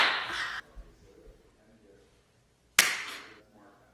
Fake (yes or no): no